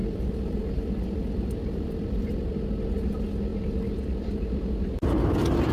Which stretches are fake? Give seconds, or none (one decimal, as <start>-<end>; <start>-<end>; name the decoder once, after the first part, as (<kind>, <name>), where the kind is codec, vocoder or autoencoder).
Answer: 0.0-2.3 (vocoder, BigVGAN v2)